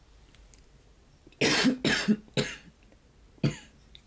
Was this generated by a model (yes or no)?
no